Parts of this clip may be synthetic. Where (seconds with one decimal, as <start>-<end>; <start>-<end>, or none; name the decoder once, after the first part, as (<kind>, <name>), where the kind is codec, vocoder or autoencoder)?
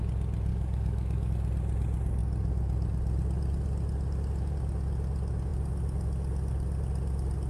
0.5-1.3 (codec, DAC)